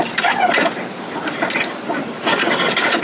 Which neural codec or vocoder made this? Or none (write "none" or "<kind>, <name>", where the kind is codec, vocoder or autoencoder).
none